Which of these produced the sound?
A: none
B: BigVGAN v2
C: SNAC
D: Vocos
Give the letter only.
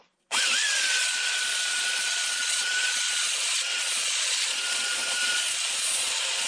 D